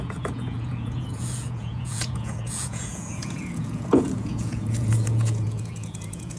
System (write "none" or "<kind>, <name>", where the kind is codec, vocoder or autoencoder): vocoder, Vocos